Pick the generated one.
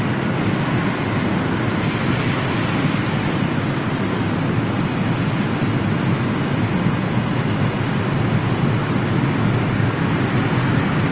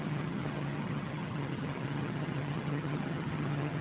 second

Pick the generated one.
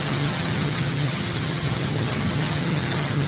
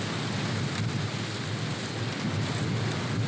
first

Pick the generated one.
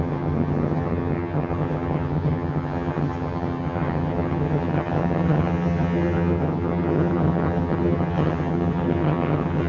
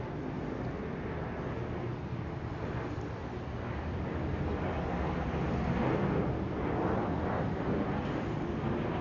first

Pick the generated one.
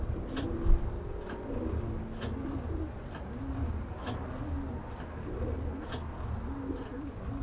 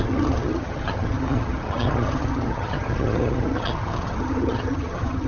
second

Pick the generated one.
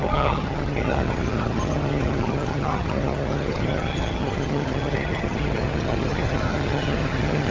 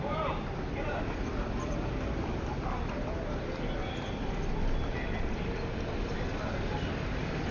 first